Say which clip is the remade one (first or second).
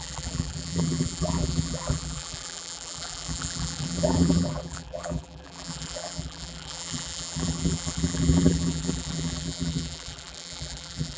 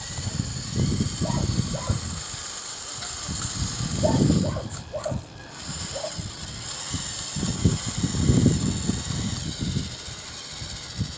first